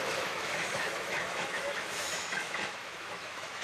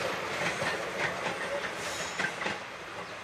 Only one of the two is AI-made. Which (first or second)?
first